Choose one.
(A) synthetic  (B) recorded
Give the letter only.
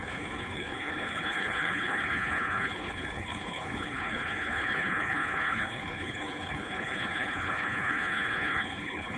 A